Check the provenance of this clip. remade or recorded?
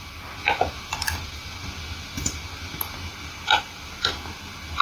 recorded